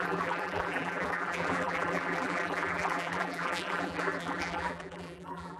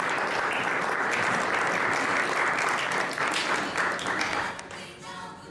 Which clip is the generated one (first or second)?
first